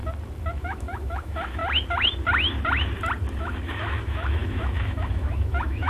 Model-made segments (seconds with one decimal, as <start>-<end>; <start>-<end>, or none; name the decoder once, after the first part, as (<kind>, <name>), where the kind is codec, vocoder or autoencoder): 0.6-1.6 (autoencoder, DAC-VAE); 3.4-5.9